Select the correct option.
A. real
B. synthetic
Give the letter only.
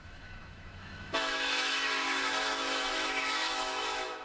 B